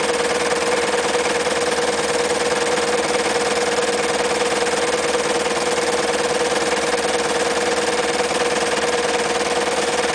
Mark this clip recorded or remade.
recorded